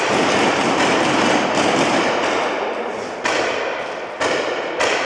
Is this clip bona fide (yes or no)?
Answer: no